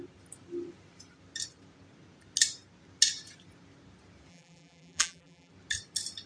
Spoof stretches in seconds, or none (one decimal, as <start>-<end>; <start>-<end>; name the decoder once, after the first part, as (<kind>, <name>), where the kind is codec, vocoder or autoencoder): 4.3-5.5 (vocoder, BigVGAN v2)